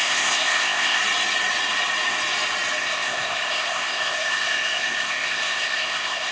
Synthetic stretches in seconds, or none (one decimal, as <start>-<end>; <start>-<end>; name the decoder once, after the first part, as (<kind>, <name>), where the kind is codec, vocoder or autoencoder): 0.0-1.0 (codec, ZipCodec); 2.8-6.3